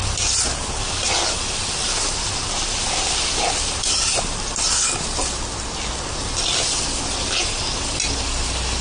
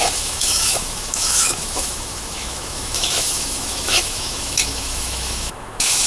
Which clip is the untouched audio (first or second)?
first